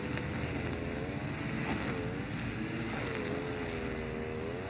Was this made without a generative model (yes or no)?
yes